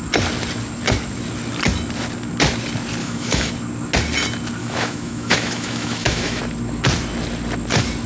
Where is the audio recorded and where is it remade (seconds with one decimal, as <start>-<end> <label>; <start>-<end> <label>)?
0.0-3.0 recorded; 3.0-3.5 remade; 3.5-4.6 recorded; 4.6-6.4 remade; 6.4-8.1 recorded